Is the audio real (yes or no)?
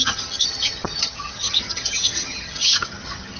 no